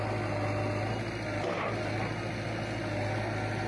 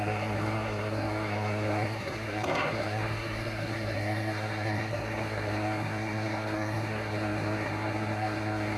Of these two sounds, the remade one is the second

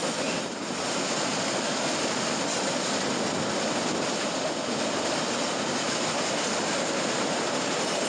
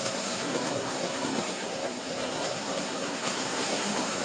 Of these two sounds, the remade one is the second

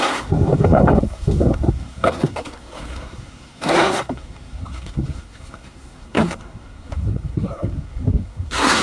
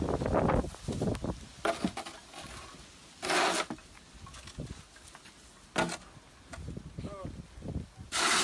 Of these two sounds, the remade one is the first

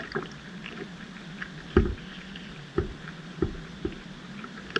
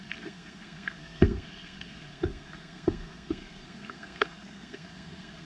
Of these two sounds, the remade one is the second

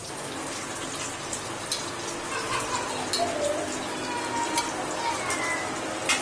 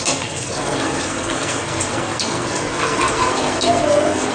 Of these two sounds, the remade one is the second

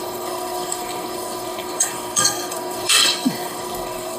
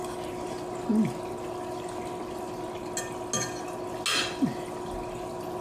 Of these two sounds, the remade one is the first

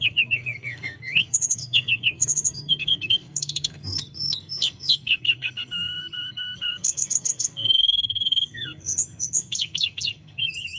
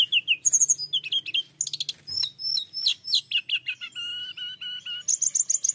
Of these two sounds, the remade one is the first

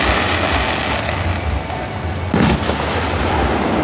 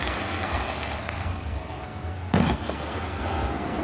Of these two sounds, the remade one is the second